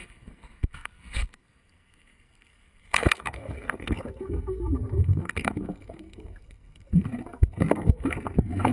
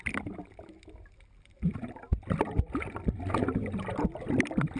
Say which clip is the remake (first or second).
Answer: first